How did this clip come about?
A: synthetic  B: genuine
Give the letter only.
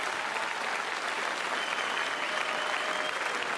B